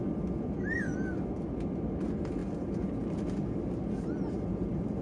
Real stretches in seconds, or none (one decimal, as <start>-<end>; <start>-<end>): 0.0-5.0